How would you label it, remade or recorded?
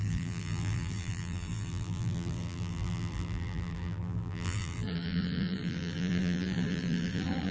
remade